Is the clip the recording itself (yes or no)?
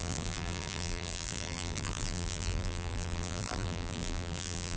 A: no